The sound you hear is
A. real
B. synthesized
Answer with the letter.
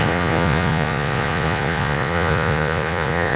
B